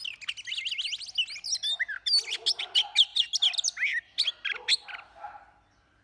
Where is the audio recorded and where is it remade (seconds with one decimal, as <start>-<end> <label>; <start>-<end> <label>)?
0.0-6.0 recorded